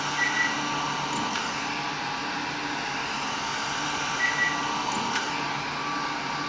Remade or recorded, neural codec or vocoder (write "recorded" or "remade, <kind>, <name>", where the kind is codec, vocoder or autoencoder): recorded